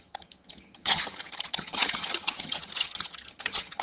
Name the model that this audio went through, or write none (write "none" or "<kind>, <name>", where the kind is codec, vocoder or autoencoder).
vocoder, HiFi-GAN